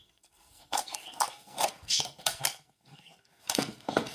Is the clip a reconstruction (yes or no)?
yes